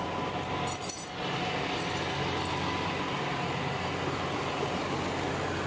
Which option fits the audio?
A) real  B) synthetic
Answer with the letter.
A